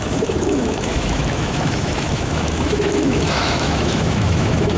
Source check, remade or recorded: remade